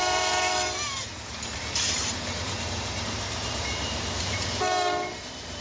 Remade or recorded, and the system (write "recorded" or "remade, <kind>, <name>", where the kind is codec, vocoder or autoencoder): remade, vocoder, BigVGAN v2